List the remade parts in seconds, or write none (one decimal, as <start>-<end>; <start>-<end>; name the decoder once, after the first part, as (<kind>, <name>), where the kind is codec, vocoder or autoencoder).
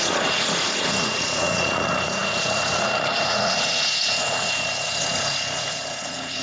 0.0-6.4 (vocoder, Vocos)